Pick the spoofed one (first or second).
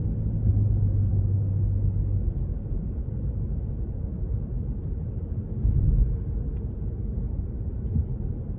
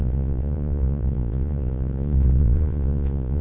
second